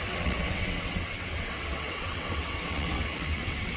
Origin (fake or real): fake